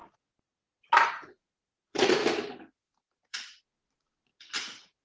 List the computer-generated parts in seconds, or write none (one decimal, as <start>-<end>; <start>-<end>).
1.1-2.2; 3.3-4.3